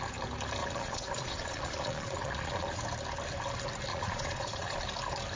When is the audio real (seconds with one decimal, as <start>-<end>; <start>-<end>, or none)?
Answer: 0.0-0.6; 2.8-3.9; 4.8-5.4